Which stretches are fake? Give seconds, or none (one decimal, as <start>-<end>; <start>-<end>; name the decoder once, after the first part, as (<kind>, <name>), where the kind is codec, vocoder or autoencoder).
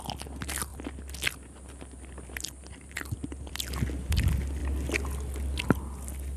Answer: none